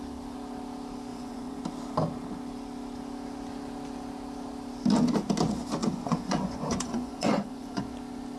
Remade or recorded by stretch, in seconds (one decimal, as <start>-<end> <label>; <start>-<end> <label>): 0.0-1.1 recorded; 1.1-1.6 remade; 1.6-5.8 recorded; 5.8-7.8 remade; 7.8-8.4 recorded